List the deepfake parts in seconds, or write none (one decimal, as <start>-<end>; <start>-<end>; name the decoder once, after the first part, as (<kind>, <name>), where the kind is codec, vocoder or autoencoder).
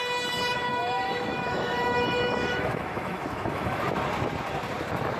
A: 0.7-3.8 (autoencoder, DAC-VAE)